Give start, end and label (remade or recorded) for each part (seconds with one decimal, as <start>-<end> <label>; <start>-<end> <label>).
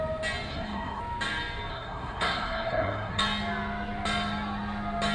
0.0-0.5 recorded; 0.5-1.0 remade; 1.0-1.7 recorded; 1.7-3.2 remade; 3.2-5.1 recorded